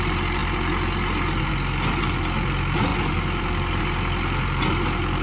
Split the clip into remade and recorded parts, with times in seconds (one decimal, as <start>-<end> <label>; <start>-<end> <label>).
0.0-5.2 recorded